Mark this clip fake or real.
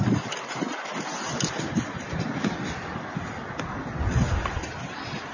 real